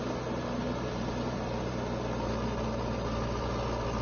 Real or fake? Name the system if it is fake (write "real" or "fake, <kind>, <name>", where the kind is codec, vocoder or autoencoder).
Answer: real